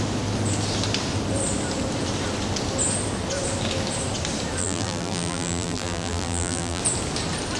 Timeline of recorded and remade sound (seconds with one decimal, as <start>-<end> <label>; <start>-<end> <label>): 0.0-4.6 recorded; 4.6-6.8 remade; 6.8-7.6 recorded